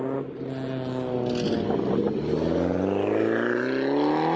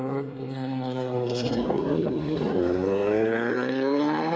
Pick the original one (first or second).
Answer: first